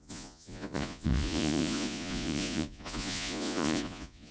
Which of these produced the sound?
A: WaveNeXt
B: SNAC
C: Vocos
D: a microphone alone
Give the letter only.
C